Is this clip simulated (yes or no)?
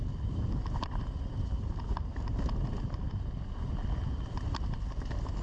no